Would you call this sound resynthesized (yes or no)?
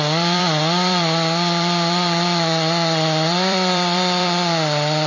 yes